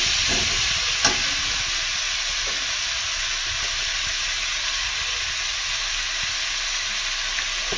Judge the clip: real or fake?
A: real